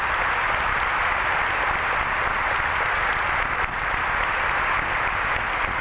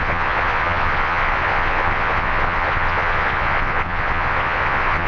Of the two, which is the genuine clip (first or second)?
first